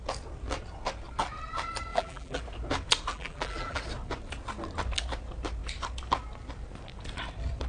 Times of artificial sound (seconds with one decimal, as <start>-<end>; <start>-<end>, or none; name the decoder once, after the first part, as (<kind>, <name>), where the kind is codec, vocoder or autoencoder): 1.9-2.4 (vocoder, BigVGAN v2); 3.1-3.8